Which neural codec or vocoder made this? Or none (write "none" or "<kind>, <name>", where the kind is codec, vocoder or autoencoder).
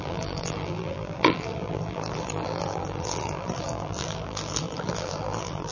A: vocoder, BigVGAN v2